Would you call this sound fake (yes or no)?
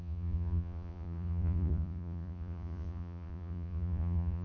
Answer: yes